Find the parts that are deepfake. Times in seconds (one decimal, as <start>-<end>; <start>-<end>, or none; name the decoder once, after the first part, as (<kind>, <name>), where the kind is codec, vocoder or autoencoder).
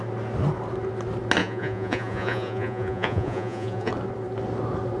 1.4-3.9 (vocoder, Vocos)